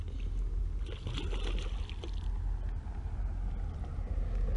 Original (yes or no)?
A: yes